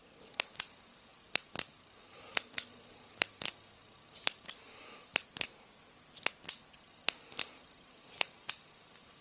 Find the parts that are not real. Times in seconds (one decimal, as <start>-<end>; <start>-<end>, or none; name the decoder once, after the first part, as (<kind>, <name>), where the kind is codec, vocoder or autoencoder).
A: none